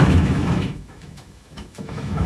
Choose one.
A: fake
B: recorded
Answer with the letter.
A